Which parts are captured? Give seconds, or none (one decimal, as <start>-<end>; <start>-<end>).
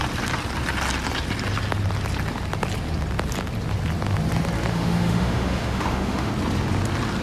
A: 0.0-4.7; 6.3-7.2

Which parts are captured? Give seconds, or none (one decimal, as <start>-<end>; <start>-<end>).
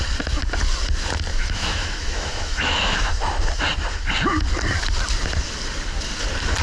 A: 0.0-1.3; 3.1-6.6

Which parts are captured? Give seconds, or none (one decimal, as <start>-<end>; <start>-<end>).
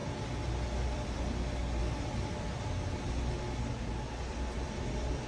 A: 1.2-1.8; 2.7-4.2; 4.8-5.3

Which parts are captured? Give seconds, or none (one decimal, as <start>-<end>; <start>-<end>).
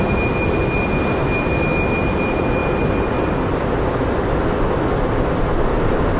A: 0.0-6.2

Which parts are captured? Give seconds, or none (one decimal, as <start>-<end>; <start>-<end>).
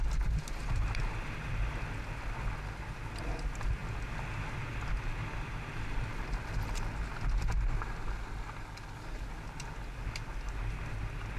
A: 0.0-11.4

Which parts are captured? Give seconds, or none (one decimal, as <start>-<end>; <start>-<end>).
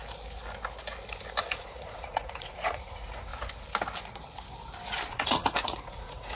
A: 0.0-1.4; 3.3-5.1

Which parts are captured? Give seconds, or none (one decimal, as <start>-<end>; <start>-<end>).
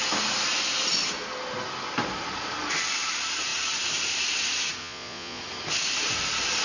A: 0.0-4.8; 5.4-6.6